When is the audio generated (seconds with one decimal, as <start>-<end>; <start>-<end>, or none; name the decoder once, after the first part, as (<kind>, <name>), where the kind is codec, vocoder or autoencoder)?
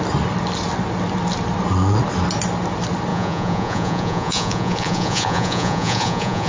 3.1-6.5 (vocoder, Vocos)